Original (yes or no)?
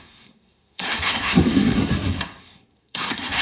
no